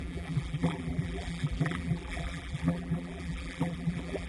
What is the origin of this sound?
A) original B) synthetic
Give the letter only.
B